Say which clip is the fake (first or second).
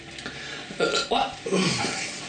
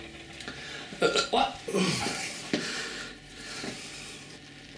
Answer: second